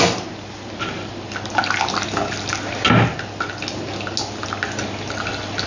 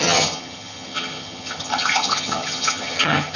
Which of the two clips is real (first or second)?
first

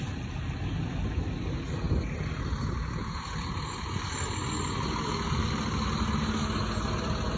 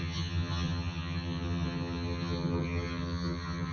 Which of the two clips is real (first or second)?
first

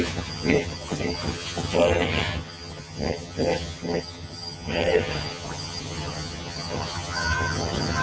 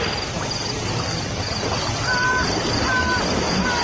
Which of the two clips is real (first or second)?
second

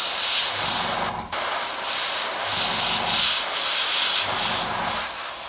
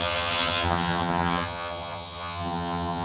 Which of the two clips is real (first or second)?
first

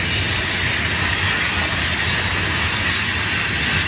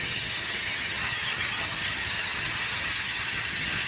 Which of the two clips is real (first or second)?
first